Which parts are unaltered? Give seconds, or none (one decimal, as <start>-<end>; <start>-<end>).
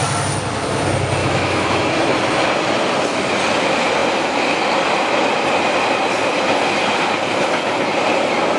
0.0-1.2; 1.8-8.6